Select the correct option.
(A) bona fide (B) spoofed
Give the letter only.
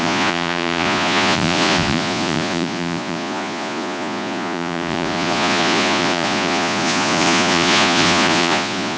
B